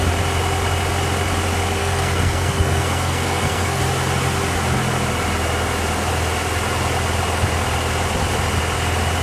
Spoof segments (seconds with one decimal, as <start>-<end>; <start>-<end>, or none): 1.8-3.8